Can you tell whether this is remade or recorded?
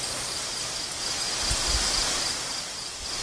recorded